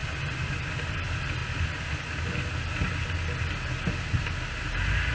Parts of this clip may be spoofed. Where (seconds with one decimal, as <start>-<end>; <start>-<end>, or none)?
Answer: none